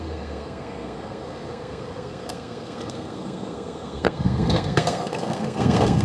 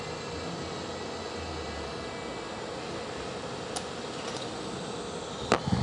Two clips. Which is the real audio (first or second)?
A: second